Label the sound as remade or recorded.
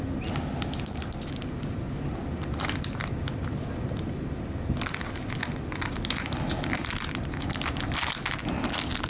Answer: recorded